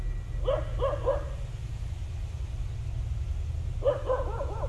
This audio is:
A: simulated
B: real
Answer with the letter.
B